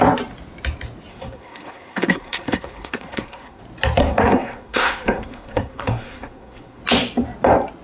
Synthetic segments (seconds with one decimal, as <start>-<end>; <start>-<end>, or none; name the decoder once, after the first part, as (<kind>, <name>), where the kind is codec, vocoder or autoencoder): 1.1-3.6 (codec, SNAC); 4.0-6.8